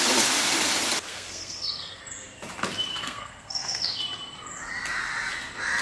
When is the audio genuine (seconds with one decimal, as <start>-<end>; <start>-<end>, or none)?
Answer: 0.0-1.1; 2.0-2.9; 4.0-5.8